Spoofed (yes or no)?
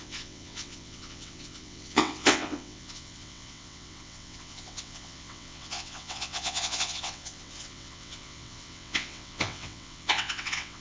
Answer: yes